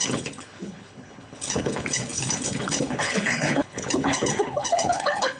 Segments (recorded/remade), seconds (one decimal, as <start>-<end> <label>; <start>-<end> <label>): 0.0-5.4 remade